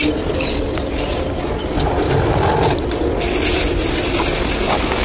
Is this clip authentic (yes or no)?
yes